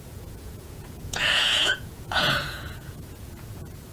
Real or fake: fake